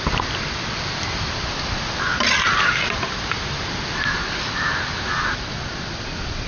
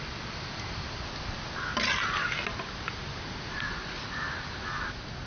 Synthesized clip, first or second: first